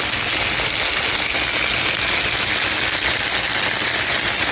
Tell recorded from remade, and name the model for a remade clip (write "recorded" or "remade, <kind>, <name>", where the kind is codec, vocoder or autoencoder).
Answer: recorded